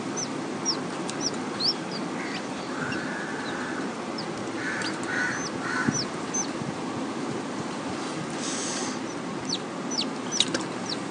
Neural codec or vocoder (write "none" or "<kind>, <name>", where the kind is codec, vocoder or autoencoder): none